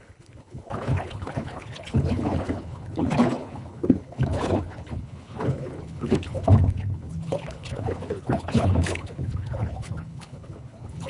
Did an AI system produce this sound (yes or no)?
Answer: yes